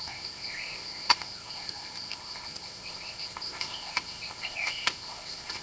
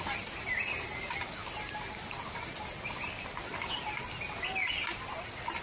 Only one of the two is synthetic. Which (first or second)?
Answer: first